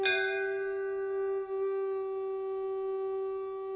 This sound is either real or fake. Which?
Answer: real